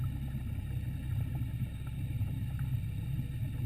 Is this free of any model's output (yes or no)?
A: yes